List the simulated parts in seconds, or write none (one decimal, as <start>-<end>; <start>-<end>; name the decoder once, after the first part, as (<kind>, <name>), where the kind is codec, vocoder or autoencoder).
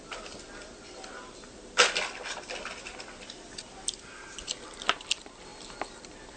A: none